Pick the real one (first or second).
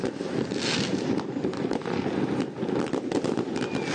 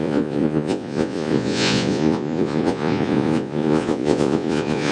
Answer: first